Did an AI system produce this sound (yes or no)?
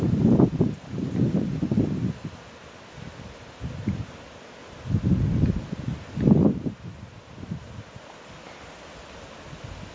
no